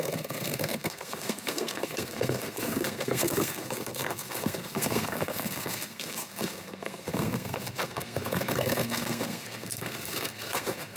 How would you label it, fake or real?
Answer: fake